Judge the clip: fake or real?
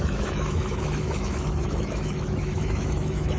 fake